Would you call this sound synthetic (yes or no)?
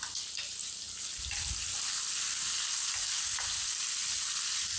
no